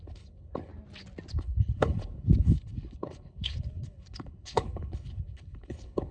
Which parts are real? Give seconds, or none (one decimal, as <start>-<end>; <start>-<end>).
0.7-1.3